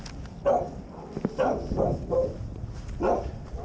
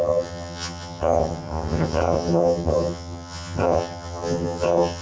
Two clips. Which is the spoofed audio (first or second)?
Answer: second